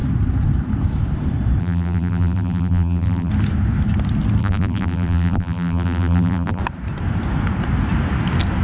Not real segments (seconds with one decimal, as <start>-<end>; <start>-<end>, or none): 1.6-3.3; 4.4-6.6